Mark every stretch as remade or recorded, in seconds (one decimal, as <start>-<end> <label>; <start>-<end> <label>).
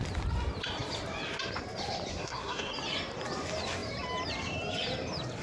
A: 0.0-2.1 recorded; 2.1-2.7 remade; 2.7-5.4 recorded